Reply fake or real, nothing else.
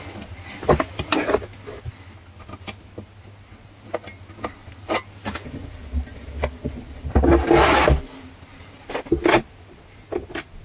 real